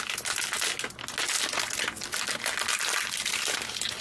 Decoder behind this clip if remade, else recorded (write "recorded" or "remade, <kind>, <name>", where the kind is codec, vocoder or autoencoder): recorded